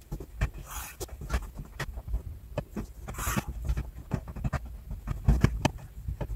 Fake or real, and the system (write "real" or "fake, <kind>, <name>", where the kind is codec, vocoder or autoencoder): real